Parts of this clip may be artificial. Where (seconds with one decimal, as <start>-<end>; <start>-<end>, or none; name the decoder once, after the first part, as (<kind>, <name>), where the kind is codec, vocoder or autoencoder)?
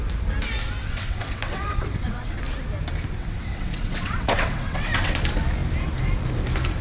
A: 0.8-2.4 (vocoder, WaveNeXt); 3.2-5.1